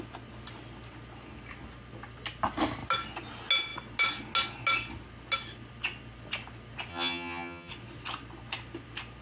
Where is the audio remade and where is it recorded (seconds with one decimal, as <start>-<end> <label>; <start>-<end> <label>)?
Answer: 0.0-6.9 recorded; 6.9-7.7 remade; 7.7-9.2 recorded